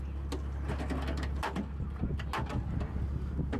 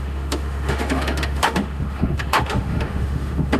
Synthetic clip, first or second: second